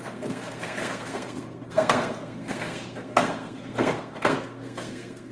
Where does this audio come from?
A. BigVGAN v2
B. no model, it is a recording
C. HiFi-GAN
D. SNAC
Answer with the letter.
D